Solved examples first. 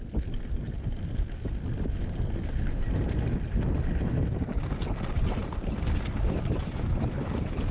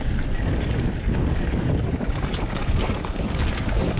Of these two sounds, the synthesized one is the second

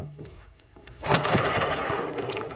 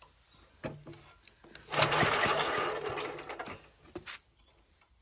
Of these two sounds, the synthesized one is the first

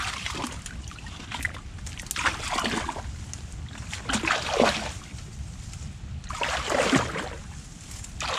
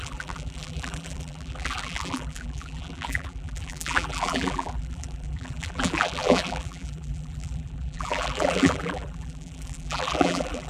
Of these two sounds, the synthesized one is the second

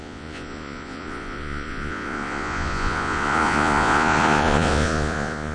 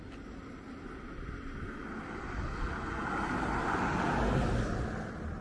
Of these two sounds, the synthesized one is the first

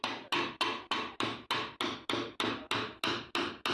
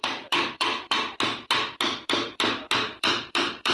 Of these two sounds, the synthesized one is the second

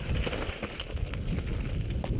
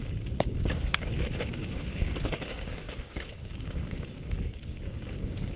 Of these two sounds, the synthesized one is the second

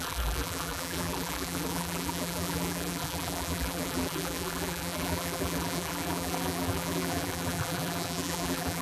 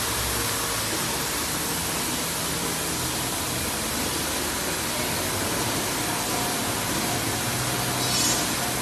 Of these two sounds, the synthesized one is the first